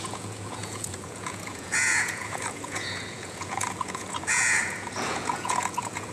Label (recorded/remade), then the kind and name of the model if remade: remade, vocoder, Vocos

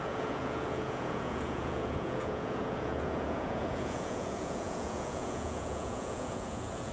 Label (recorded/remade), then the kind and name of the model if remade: remade, vocoder, Vocos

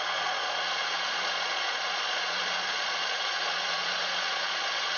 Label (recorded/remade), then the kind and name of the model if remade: remade, vocoder, Vocos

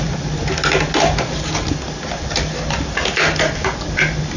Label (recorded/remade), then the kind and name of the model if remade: recorded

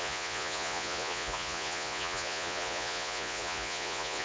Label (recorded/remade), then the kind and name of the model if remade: remade, vocoder, Vocos